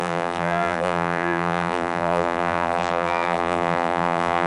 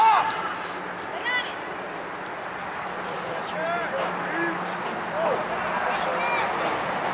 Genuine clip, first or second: second